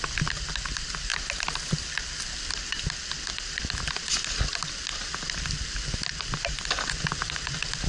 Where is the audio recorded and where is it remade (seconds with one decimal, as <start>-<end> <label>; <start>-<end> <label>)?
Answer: 0.0-7.9 recorded